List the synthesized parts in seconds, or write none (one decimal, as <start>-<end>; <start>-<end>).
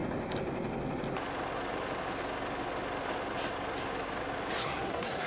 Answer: 4.6-5.3